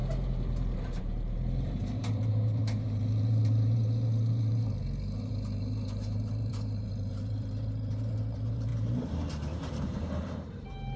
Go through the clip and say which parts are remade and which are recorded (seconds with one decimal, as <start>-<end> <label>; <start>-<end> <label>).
0.0-11.0 remade